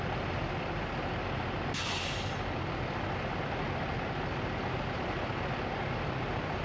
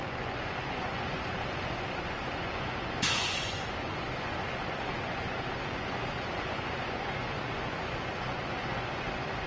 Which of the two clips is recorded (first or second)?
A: first